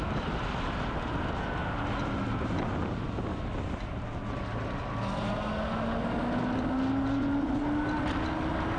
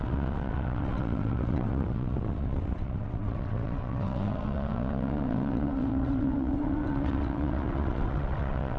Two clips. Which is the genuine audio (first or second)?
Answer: first